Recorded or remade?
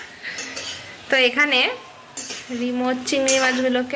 recorded